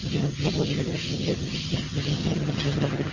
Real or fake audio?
fake